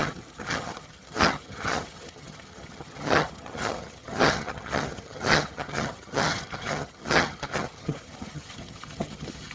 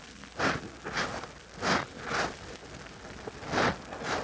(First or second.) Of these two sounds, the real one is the second